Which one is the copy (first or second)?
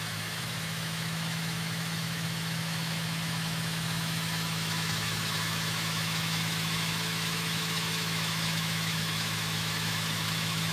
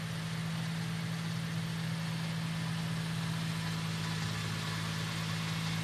first